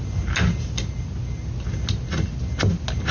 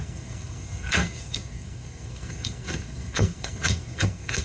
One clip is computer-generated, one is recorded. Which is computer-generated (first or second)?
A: second